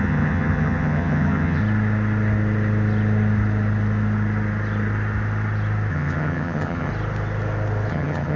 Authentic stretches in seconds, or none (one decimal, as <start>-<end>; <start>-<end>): 1.6-5.9; 6.9-7.9